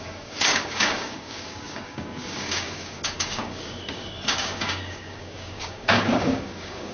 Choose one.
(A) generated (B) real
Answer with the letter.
A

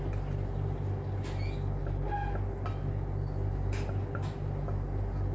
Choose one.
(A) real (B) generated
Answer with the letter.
A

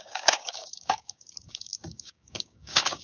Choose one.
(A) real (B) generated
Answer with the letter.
B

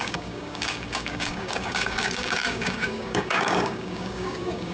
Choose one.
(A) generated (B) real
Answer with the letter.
A